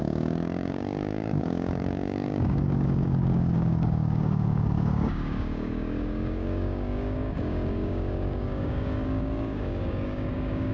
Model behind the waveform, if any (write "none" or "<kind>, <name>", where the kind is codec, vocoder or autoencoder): codec, DAC